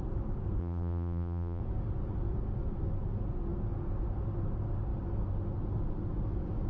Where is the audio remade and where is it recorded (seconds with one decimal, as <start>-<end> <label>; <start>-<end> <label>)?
0.0-0.6 recorded; 0.6-1.6 remade; 1.6-6.7 recorded